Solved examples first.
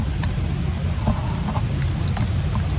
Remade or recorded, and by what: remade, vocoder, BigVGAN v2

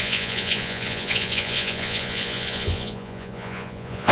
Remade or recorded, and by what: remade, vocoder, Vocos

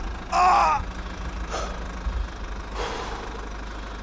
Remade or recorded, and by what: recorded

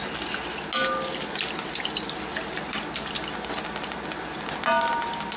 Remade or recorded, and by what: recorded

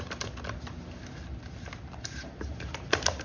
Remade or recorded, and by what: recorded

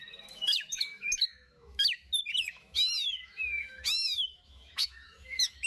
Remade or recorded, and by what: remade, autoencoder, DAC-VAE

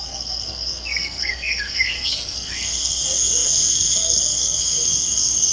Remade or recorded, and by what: remade, codec, SNAC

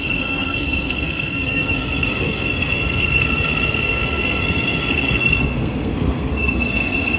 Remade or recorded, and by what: remade, codec, SNAC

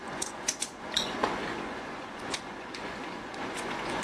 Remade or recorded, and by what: remade, vocoder, Vocos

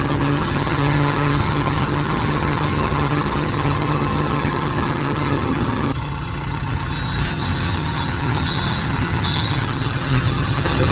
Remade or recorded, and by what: remade, vocoder, HiFi-GAN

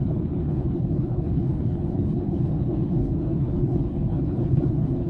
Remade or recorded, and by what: remade, codec, HILCodec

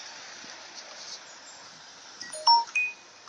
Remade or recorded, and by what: remade, vocoder, BigVGAN v2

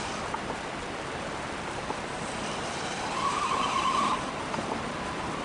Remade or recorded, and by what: remade, vocoder, BigVGAN v2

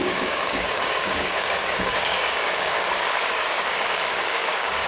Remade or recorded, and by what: remade, codec, DAC